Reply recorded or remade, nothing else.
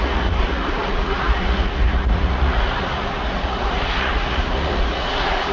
remade